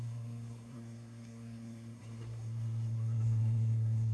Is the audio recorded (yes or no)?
no